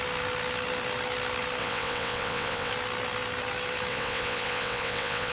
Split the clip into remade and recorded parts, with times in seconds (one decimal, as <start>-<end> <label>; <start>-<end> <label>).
0.0-1.6 recorded; 1.6-2.7 remade; 2.7-3.9 recorded; 3.9-5.3 remade